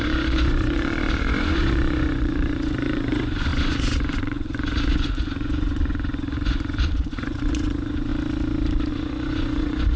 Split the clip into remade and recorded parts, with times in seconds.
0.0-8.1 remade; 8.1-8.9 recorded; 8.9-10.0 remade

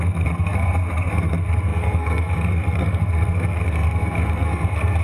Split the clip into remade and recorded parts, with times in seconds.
0.0-5.0 remade

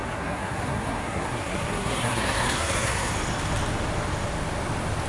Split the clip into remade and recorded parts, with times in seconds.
0.0-3.1 remade; 3.1-5.1 recorded

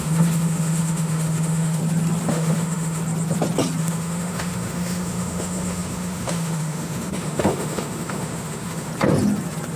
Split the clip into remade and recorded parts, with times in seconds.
0.0-1.8 remade; 1.8-2.3 recorded; 2.3-3.0 remade; 3.0-3.8 recorded; 3.8-8.9 remade; 8.9-9.8 recorded

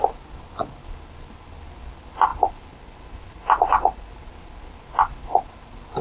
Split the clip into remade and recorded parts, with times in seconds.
0.0-6.0 recorded

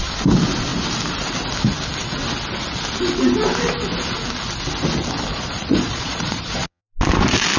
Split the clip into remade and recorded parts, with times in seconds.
0.0-5.3 recorded; 5.3-6.8 remade; 6.8-7.6 recorded

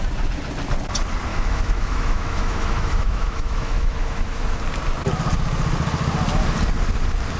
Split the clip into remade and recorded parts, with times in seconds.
0.0-1.3 recorded; 1.3-4.4 remade; 4.4-7.4 recorded

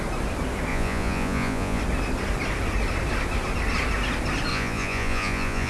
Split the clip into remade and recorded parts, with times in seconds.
0.0-0.7 recorded; 0.7-1.8 remade; 1.8-4.5 recorded; 4.5-5.7 remade